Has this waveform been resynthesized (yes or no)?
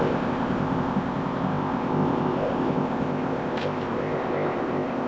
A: yes